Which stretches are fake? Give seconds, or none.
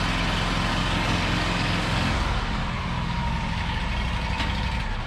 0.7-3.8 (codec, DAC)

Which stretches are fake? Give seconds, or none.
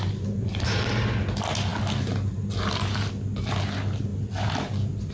none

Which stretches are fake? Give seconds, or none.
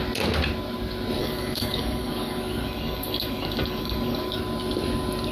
1.2-4.4 (codec, DAC)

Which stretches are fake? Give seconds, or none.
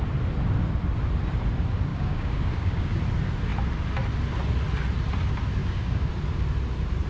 1.9-3.0 (codec, DAC); 5.6-6.1